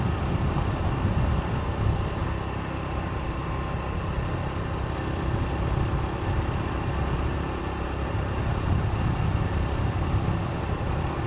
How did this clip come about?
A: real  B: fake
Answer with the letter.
A